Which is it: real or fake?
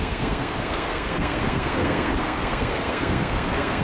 fake